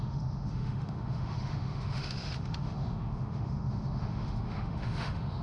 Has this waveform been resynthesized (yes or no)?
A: yes